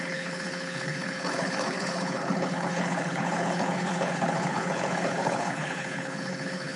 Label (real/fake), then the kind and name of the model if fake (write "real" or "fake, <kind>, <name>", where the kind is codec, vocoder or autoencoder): fake, codec, HILCodec